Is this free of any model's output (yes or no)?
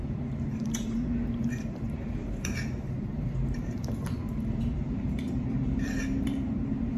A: no